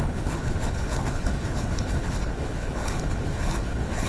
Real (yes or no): no